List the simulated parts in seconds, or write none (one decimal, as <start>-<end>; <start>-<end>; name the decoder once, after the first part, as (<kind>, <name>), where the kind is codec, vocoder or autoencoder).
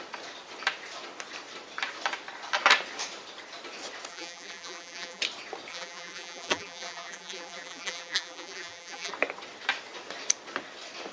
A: 4.1-5.2 (vocoder, BigVGAN v2); 5.7-9.1